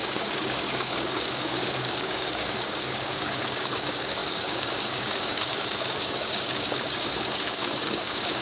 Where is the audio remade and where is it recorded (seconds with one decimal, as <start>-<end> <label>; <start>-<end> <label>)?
0.0-8.4 remade